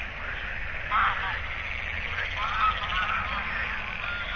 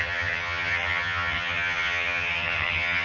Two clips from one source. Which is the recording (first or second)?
first